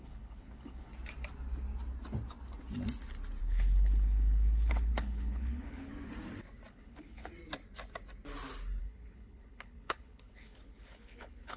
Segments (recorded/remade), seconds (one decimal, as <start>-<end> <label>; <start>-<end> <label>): 0.0-0.9 remade; 0.9-3.4 recorded; 3.4-5.9 remade; 5.9-6.7 recorded; 6.7-7.3 remade; 7.3-8.8 recorded; 8.8-11.6 remade